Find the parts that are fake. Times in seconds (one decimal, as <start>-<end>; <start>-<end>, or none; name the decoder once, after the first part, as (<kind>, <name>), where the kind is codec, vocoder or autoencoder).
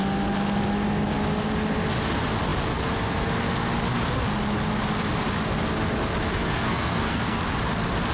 6.4-7.4 (codec, SNAC)